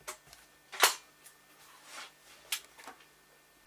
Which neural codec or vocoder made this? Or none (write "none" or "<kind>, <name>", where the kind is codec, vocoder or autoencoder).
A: none